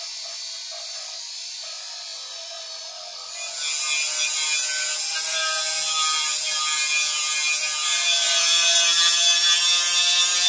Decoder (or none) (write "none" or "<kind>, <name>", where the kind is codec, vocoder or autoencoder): none